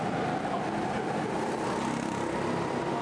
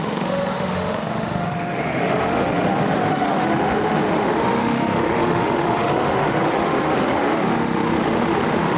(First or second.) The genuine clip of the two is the first